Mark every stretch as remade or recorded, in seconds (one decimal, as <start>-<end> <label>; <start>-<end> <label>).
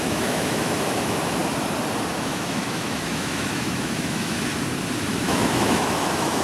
0.0-1.4 remade; 1.4-2.1 recorded; 2.1-4.5 remade; 4.5-5.1 recorded; 5.1-6.4 remade